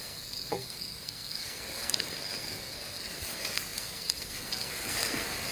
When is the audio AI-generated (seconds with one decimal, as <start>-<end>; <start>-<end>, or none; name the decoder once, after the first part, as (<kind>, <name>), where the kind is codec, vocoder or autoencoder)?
0.0-5.5 (codec, SNAC)